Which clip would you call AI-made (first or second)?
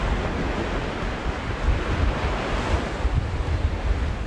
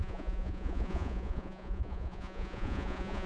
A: second